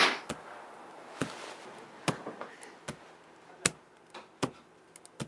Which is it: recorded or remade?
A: recorded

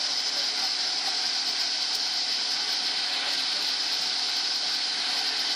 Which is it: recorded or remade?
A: recorded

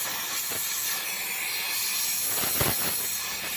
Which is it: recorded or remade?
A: recorded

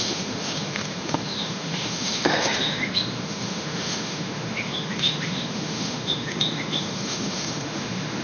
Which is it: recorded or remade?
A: remade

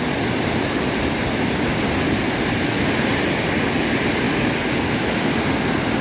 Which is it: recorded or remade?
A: recorded